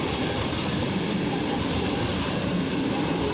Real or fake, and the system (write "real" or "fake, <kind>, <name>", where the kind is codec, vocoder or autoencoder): real